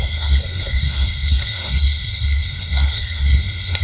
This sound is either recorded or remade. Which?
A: remade